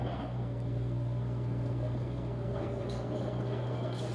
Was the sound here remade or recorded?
remade